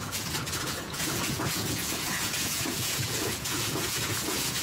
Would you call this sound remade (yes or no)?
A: yes